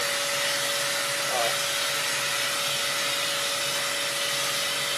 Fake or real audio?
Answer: real